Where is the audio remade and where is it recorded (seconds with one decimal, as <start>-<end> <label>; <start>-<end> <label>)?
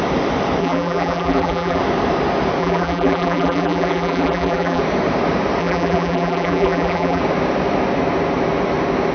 0.0-0.6 recorded; 0.6-1.8 remade; 1.8-2.6 recorded; 2.6-4.8 remade; 4.8-5.6 recorded; 5.6-7.2 remade; 7.2-9.1 recorded